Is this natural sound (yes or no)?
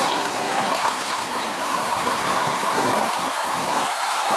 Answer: no